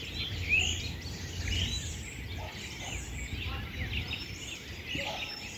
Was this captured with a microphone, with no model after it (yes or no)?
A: yes